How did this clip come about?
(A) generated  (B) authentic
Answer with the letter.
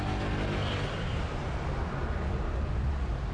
B